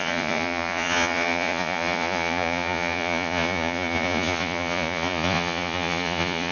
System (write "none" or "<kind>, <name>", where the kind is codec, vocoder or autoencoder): vocoder, Vocos